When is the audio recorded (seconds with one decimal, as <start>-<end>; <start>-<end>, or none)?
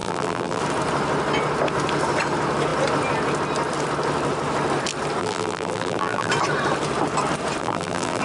0.6-5.2; 6.3-7.6